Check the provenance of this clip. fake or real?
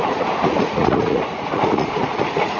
fake